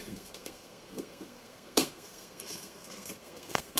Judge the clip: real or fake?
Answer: fake